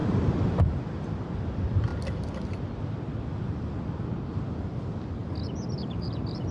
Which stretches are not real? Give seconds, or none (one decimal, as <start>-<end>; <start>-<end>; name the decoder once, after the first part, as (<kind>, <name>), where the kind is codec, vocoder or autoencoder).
0.6-1.9 (vocoder, BigVGAN v2); 5.8-6.5